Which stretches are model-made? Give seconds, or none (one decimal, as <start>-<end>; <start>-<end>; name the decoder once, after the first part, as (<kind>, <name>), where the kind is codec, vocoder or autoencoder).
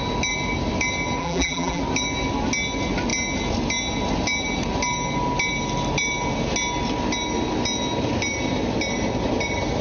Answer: 1.2-1.8 (vocoder, BigVGAN v2)